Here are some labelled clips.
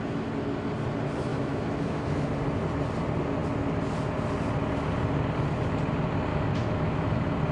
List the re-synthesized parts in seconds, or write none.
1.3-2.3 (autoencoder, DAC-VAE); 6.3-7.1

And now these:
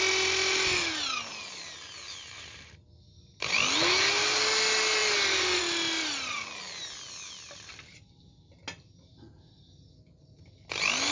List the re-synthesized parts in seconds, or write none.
none

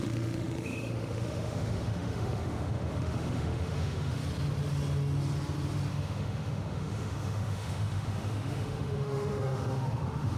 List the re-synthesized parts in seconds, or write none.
0.0-4.2 (autoencoder, DAC-VAE); 5.9-10.4

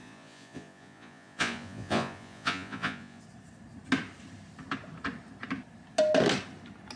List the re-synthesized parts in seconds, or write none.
0.0-3.2 (vocoder, Vocos)

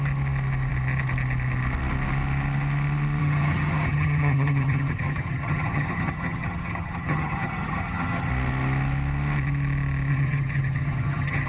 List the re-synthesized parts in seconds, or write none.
3.2-8.3 (vocoder, HiFi-GAN); 10.1-11.5

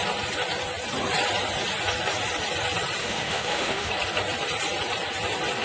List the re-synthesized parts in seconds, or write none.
3.0-3.9 (autoencoder, DAC-VAE)

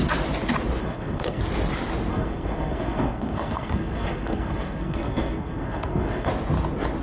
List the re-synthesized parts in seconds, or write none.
0.8-1.4 (codec, SNAC); 2.1-6.3